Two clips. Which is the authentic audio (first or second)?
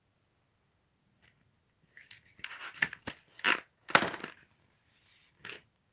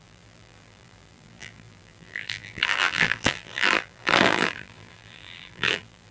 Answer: first